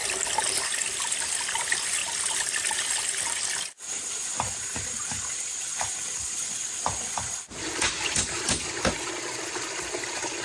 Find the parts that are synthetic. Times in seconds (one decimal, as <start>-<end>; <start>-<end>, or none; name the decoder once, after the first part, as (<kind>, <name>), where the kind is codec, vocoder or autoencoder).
0.6-10.4 (vocoder, BigVGAN v2)